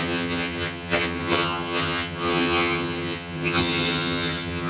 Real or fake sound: fake